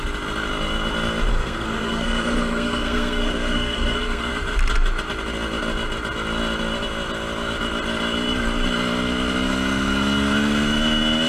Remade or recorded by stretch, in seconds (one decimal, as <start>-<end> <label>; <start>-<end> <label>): 0.0-1.3 recorded; 1.3-4.3 remade; 4.3-11.3 recorded